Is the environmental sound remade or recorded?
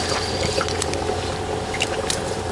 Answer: remade